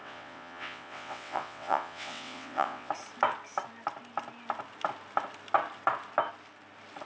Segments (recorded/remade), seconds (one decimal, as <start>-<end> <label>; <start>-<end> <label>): 0.0-2.9 remade; 2.9-7.1 recorded